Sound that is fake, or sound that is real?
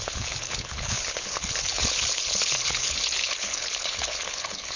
fake